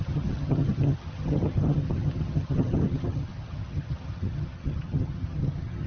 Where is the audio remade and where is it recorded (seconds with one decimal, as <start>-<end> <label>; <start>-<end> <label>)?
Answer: 0.0-5.9 remade